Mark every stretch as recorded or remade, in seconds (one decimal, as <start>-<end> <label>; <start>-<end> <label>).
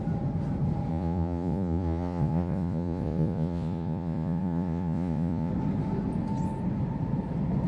0.0-0.9 recorded; 0.9-5.5 remade; 5.5-7.7 recorded